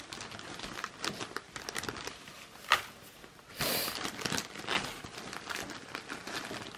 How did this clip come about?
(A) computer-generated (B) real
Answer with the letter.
B